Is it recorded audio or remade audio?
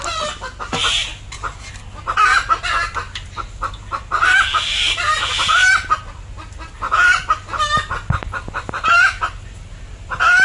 recorded